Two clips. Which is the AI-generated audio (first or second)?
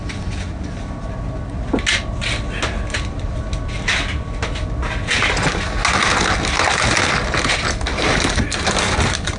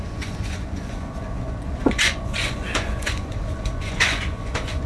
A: second